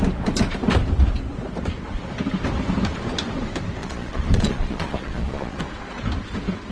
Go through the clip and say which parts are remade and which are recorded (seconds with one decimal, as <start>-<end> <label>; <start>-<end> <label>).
0.0-3.8 recorded; 3.8-5.6 remade; 5.6-6.7 recorded